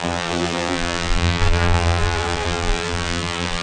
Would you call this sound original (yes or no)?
no